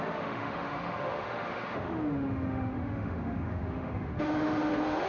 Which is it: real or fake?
fake